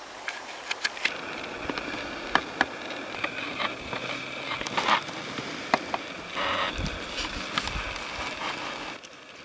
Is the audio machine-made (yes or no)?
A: no